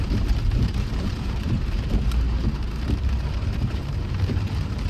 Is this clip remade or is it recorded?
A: remade